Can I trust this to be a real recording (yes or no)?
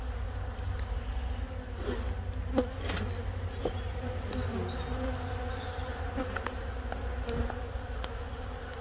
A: yes